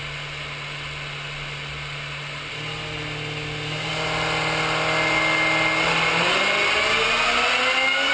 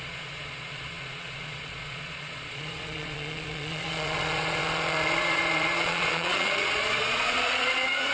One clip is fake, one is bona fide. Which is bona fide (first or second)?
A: first